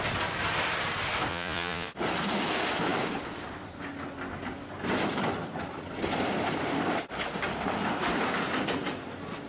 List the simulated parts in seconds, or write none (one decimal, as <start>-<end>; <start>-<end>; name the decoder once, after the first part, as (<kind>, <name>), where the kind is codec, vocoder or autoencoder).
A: 1.3-1.9 (vocoder, Vocos)